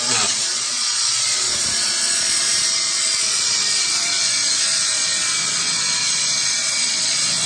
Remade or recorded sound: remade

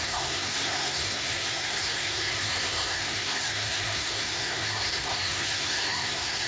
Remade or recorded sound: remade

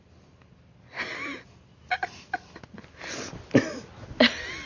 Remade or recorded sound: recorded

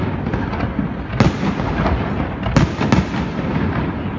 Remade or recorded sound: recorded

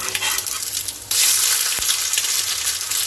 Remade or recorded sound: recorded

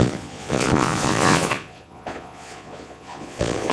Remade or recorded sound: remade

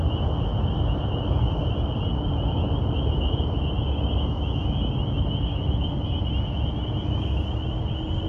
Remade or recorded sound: recorded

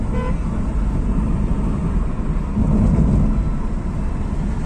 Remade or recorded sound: recorded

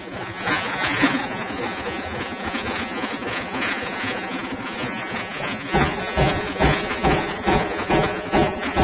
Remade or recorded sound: remade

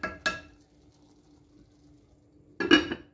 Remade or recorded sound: recorded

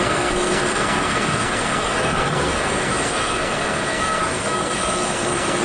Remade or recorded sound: remade